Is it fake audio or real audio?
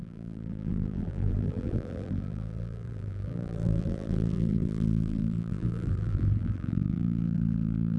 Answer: fake